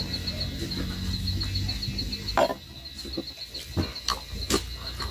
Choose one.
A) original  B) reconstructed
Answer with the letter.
A